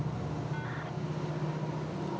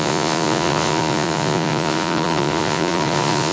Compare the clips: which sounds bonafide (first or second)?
first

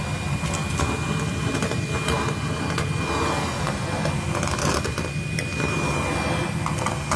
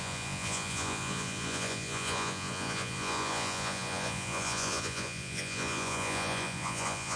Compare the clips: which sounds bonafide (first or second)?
first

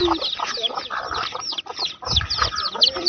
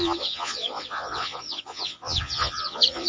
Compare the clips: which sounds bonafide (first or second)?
first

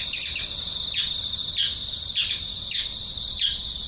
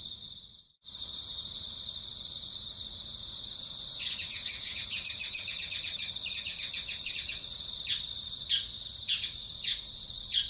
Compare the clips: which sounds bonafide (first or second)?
first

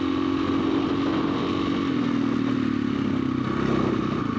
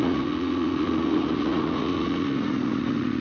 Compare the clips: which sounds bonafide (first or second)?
first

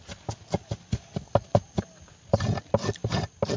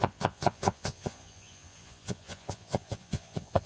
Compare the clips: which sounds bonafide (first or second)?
first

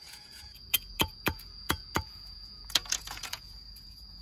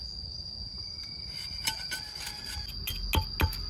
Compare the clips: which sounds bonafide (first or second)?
second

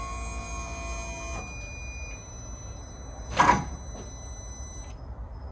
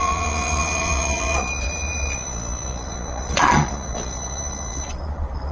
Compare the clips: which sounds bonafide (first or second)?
first